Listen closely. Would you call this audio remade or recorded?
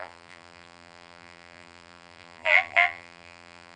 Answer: remade